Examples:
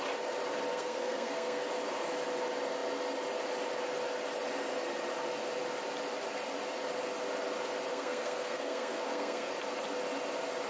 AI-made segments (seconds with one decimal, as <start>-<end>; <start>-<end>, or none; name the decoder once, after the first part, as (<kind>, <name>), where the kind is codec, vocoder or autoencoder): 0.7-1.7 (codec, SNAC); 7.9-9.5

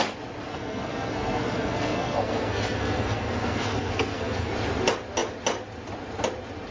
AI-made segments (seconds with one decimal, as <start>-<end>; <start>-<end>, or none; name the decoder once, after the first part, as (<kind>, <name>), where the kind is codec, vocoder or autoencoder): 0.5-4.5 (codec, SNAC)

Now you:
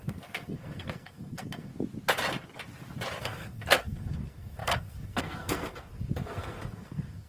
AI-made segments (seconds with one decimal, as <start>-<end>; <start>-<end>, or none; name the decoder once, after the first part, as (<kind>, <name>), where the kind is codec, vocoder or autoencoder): 0.0-1.7 (codec, SNAC); 3.2-7.3

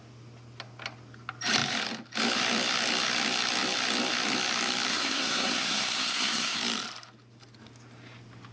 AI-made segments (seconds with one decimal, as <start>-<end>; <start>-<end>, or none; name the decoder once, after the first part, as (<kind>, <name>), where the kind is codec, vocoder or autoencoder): 4.9-6.6 (codec, SNAC)